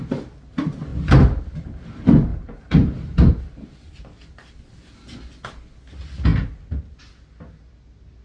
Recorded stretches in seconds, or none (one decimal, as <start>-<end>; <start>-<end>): 0.0-2.3; 3.5-8.2